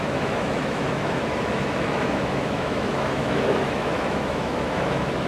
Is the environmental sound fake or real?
fake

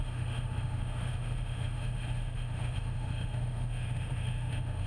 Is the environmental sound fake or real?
fake